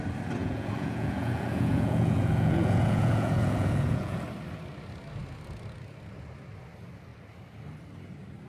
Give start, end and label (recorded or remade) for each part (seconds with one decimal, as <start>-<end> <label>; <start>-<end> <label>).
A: 0.0-0.4 recorded; 0.4-4.2 remade; 4.2-8.5 recorded